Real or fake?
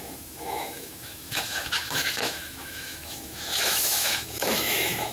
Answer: fake